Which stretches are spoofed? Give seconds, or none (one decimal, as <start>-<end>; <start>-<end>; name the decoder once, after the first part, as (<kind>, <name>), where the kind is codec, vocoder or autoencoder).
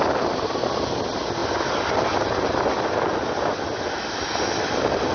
none